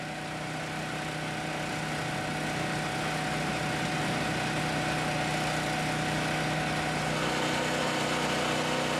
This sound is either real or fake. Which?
real